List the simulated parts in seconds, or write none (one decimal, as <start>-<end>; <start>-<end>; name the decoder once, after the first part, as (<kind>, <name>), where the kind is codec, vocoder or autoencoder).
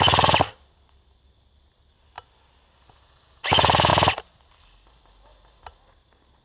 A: none